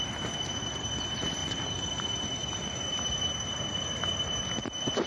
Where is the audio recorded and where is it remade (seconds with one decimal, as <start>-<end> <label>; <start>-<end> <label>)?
0.0-5.1 recorded